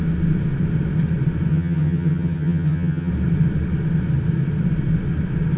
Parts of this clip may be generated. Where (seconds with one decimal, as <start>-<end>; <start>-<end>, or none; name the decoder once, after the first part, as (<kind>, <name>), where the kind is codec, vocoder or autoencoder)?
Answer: 1.5-3.1 (vocoder, HiFi-GAN)